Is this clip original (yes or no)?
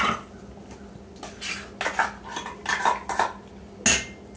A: yes